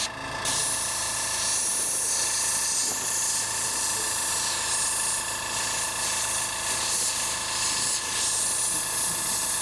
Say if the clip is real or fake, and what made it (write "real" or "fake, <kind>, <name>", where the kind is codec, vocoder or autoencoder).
real